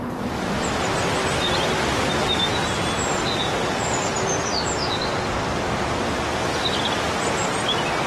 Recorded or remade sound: recorded